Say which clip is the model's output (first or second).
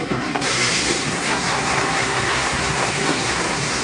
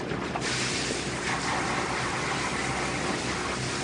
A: first